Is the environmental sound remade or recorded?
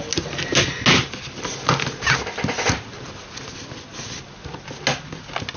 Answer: recorded